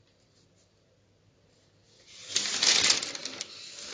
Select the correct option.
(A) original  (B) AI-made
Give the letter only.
A